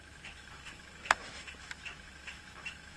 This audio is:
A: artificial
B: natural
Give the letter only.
A